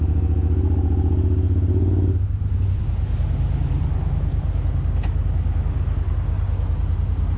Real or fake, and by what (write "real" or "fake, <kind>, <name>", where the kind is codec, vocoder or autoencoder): real